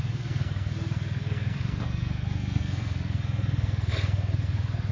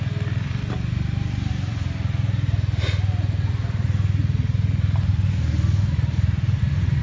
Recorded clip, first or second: second